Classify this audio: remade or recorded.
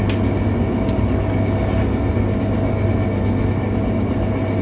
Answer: recorded